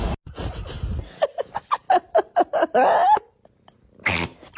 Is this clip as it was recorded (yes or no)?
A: yes